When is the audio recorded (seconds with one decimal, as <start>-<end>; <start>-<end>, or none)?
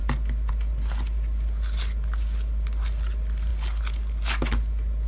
0.0-5.1